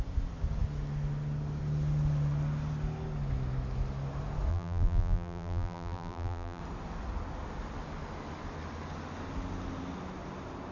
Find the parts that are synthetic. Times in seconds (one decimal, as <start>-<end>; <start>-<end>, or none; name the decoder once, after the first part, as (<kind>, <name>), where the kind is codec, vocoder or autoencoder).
4.5-6.6 (vocoder, BigVGAN v2)